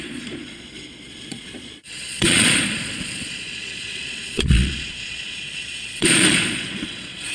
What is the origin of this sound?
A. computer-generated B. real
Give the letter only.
A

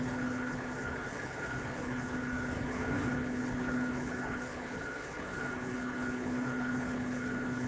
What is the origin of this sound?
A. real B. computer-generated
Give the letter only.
B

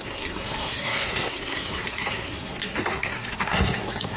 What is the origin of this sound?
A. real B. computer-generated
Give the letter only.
B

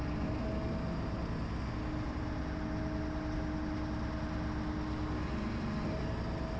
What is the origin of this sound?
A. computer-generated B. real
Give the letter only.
B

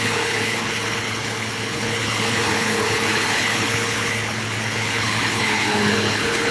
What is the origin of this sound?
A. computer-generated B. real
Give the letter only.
A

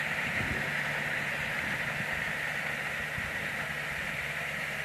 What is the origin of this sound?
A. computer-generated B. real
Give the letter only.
B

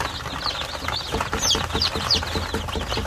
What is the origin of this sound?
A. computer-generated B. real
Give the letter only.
B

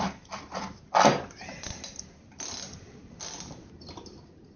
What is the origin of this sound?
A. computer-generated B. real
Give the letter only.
B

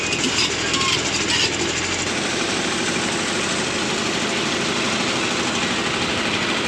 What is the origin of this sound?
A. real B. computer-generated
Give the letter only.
A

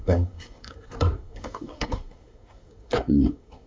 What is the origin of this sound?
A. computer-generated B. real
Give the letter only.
A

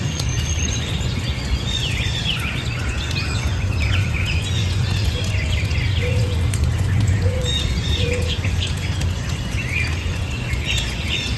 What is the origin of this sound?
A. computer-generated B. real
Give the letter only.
A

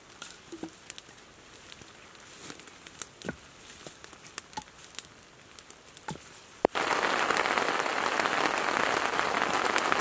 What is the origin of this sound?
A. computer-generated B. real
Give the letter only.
B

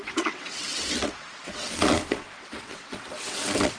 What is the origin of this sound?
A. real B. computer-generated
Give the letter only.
B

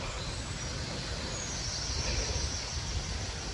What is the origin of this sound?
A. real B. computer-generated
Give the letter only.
A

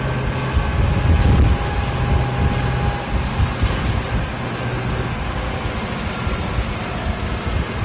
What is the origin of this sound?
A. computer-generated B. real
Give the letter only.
B